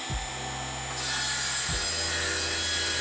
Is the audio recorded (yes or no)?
yes